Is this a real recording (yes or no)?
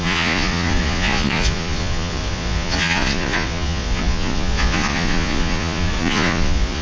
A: no